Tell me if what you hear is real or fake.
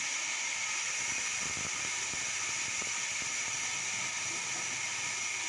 real